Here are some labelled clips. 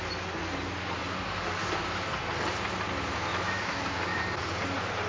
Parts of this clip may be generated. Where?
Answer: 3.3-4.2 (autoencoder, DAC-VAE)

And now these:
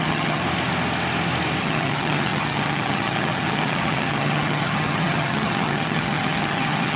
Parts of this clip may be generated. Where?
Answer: 0.0-0.4 (vocoder, HiFi-GAN); 1.6-7.0

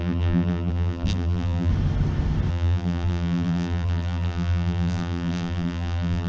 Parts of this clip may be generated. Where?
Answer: 0.0-1.7 (vocoder, BigVGAN v2); 2.5-6.3